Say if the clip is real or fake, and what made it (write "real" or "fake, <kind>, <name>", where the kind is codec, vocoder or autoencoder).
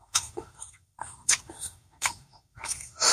fake, autoencoder, DAC-VAE